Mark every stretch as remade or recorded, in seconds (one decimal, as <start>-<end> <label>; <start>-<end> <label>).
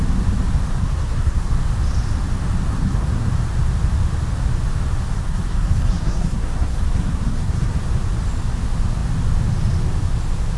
0.0-0.8 recorded; 0.8-1.5 remade; 1.5-2.7 recorded; 2.7-3.3 remade; 3.3-5.2 recorded; 5.2-7.8 remade; 7.8-10.6 recorded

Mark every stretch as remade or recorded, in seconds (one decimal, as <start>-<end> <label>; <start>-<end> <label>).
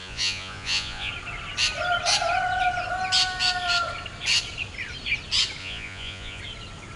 0.0-1.1 remade; 1.1-5.6 recorded; 5.6-6.4 remade; 6.4-7.0 recorded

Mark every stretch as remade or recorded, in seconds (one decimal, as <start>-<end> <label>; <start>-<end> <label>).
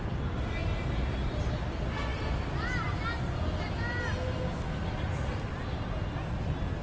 0.0-6.8 recorded